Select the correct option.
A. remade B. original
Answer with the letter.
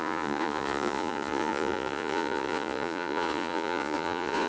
A